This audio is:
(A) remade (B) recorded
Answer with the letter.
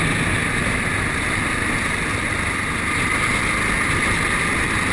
B